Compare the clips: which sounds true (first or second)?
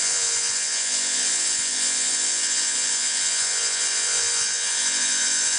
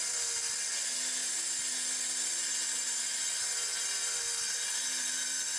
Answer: second